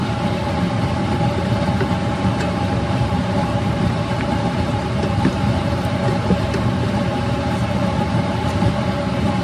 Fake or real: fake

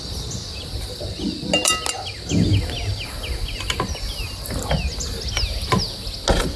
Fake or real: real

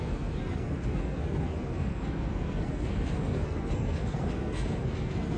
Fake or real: fake